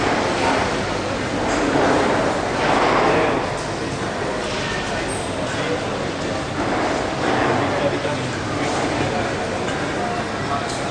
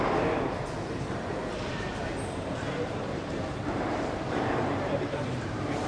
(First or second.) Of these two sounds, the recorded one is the first